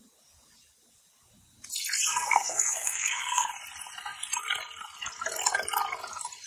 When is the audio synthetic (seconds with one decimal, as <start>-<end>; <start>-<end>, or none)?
2.1-3.5

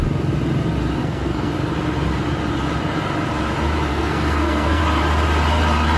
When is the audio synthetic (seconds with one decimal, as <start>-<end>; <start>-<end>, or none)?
1.0-1.5; 3.9-4.8

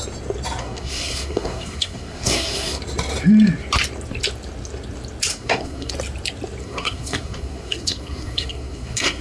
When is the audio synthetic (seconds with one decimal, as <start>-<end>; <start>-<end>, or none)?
0.6-2.8; 5.3-5.9; 6.6-9.2

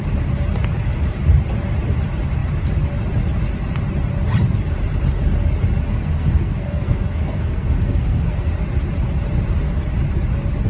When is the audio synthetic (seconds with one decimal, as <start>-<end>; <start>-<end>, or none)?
5.9-8.5